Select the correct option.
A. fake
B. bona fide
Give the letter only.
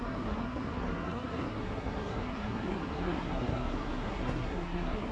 A